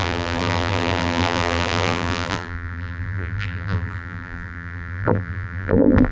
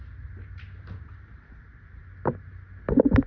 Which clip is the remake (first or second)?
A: first